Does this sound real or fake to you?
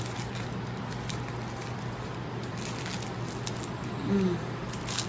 real